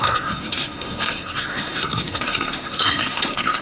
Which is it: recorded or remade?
remade